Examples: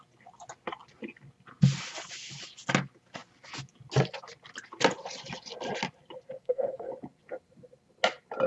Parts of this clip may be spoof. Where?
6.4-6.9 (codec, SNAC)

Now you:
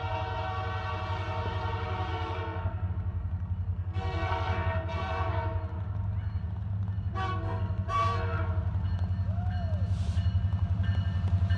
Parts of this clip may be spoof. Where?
2.1-2.9 (codec, SNAC); 3.7-5.3; 7.4-8.4

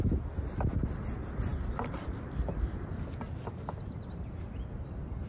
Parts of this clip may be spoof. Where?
none

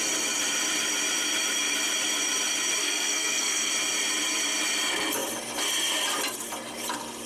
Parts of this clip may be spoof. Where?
2.8-3.7 (codec, SNAC)